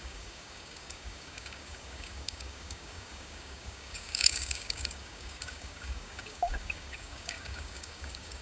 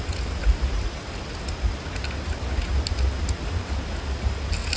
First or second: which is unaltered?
second